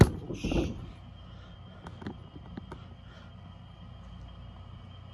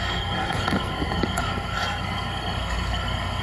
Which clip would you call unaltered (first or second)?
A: first